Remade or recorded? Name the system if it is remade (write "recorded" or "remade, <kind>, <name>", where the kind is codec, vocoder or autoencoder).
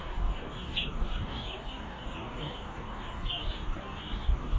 remade, codec, DAC